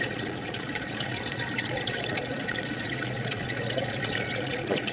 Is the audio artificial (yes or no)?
yes